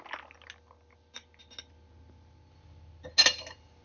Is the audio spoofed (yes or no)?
no